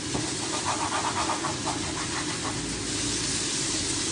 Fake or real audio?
real